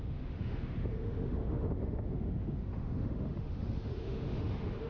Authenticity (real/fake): fake